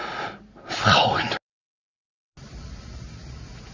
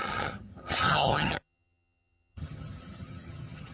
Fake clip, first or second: second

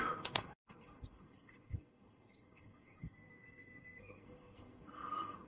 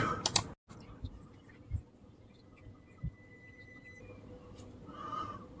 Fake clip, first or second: first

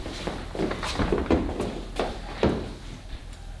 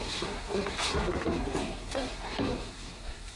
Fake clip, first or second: second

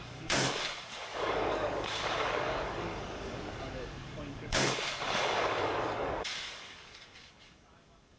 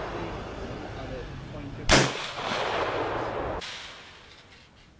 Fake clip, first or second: first